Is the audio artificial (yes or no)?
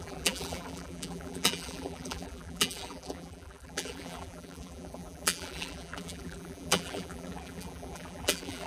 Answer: yes